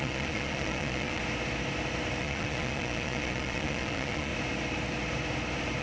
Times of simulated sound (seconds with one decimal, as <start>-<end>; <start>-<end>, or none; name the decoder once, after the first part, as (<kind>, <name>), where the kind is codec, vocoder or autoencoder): 0.0-1.2 (vocoder, Vocos); 2.2-4.3